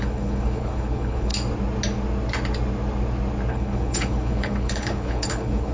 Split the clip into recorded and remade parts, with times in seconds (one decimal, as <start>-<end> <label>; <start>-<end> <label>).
0.0-1.3 remade; 1.3-3.5 recorded; 3.5-5.7 remade